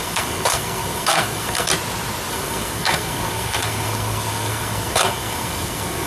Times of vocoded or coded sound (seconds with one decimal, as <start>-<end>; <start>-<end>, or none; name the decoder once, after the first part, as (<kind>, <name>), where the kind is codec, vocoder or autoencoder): 0.0-1.7 (codec, SNAC); 2.3-6.1